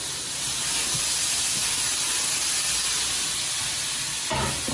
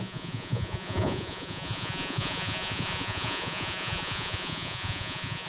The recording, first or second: first